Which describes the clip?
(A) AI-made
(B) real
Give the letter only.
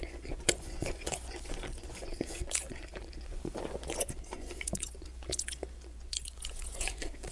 A